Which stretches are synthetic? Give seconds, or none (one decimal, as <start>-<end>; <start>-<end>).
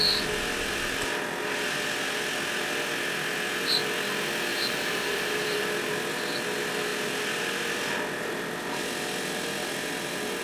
4.5-5.6